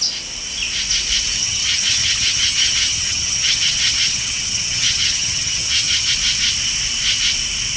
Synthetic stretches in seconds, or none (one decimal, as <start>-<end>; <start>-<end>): 1.4-6.1